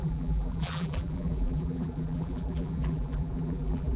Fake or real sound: fake